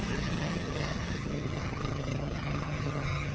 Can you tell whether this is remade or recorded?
remade